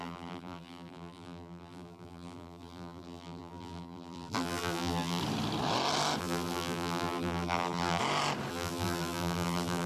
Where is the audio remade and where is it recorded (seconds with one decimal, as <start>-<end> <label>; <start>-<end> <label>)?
0.0-5.2 remade; 5.2-6.2 recorded; 6.2-8.0 remade; 8.0-8.5 recorded; 8.5-9.9 remade